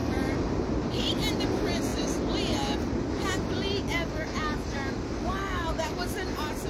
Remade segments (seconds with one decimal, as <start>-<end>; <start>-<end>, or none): 0.0-1.1